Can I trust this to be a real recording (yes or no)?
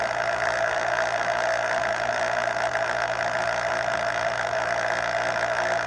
yes